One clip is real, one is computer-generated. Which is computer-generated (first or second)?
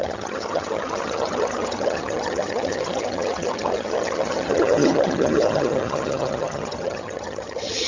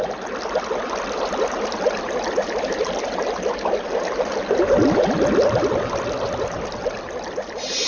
first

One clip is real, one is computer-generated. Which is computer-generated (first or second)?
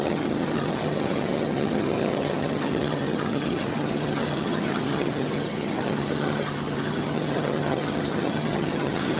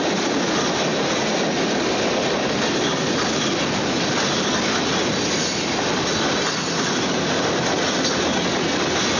first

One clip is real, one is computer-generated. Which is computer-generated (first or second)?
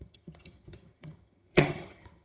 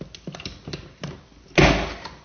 first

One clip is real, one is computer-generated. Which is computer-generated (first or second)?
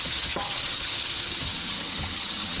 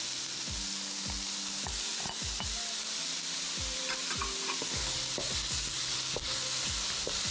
first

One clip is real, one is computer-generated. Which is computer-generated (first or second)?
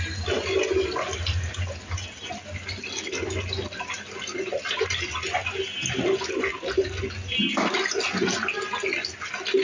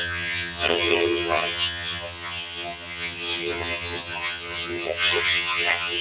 second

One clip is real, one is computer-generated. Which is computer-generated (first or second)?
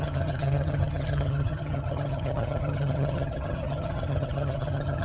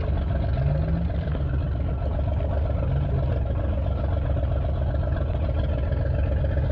first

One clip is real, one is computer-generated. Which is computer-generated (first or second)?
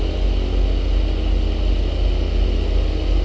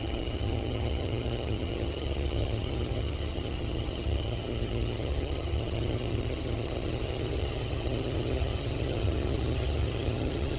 second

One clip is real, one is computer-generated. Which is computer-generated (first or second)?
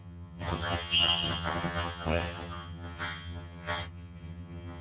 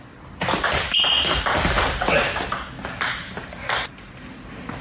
first